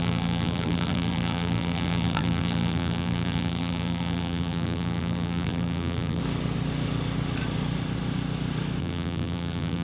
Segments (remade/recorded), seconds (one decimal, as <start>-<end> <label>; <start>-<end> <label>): 0.0-6.2 remade; 6.2-8.8 recorded; 8.8-9.8 remade